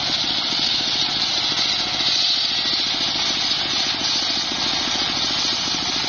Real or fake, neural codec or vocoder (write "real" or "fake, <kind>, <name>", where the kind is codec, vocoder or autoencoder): real